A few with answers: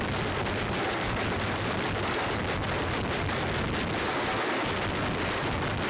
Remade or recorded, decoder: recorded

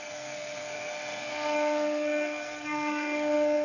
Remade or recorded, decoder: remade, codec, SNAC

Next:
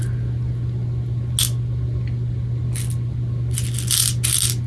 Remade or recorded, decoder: recorded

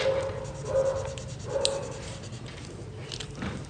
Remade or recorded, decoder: recorded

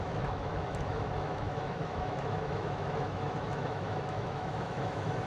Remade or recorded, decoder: remade, autoencoder, DAC-VAE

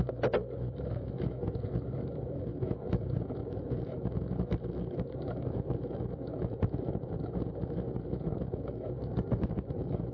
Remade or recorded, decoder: remade, autoencoder, DAC-VAE